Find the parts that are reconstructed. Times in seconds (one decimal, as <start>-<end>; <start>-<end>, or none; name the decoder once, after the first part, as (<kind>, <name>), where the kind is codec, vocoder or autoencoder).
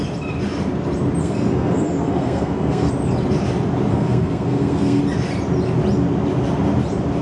1.2-2.9 (codec, SNAC); 3.9-5.0